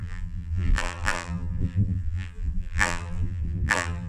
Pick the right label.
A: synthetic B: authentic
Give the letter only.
A